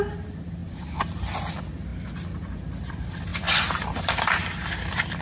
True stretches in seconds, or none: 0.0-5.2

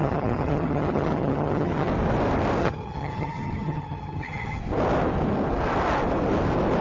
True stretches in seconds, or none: 1.9-2.6; 4.6-6.8

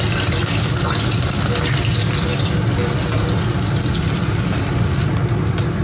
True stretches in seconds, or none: 0.0-5.8

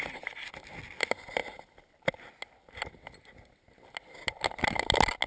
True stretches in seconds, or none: 0.0-5.3